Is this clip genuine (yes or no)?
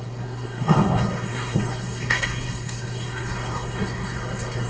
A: no